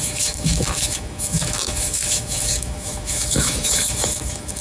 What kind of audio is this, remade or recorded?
remade